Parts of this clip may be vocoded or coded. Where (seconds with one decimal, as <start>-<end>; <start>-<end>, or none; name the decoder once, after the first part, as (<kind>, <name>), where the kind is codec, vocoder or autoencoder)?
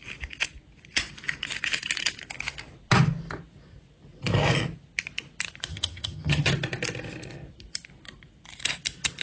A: 5.7-6.5 (vocoder, HiFi-GAN)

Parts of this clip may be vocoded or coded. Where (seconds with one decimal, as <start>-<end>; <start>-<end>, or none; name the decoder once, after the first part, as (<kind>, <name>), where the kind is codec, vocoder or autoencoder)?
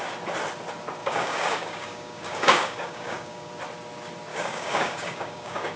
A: 1.0-3.5 (codec, DAC); 4.3-5.8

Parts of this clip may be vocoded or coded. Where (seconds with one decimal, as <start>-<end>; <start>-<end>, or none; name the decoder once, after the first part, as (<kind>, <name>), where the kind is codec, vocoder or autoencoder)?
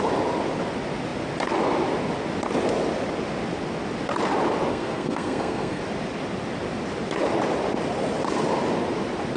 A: 4.7-5.8 (codec, SNAC)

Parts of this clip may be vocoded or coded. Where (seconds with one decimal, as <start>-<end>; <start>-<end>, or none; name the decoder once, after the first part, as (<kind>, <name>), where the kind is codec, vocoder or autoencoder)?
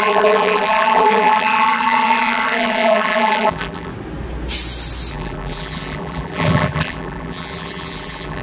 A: 0.0-3.9 (vocoder, BigVGAN v2); 5.1-8.4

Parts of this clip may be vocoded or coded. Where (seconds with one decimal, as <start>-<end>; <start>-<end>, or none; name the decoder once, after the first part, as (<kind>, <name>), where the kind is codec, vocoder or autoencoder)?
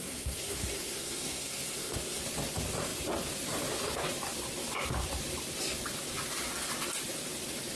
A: 0.0-2.2 (codec, SNAC)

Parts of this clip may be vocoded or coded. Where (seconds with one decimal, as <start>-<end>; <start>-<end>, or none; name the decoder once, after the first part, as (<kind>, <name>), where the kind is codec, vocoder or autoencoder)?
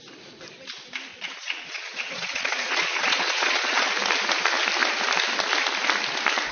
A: 1.1-3.9 (vocoder, Vocos)